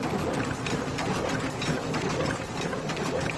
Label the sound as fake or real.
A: real